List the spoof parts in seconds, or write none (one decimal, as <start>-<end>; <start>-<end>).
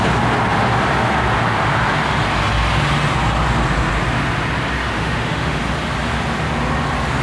4.9-5.6